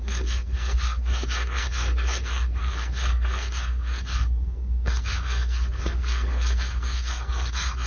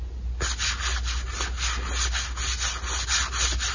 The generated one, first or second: first